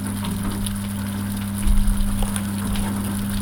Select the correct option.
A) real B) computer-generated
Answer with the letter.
A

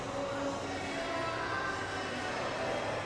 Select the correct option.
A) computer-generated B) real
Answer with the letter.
B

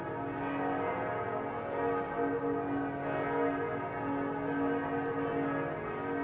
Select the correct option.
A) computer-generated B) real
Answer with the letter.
B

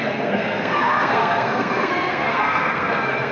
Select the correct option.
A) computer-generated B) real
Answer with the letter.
A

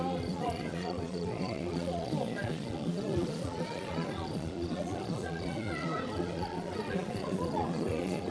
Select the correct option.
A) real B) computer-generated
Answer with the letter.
B